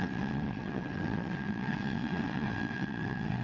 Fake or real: fake